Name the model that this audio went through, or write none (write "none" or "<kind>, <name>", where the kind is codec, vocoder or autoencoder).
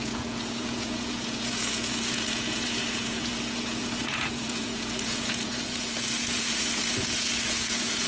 vocoder, Vocos